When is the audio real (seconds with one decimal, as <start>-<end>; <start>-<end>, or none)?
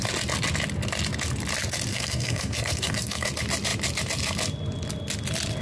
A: 0.0-1.9; 3.3-5.6